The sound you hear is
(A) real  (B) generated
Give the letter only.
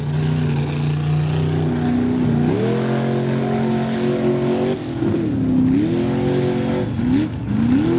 A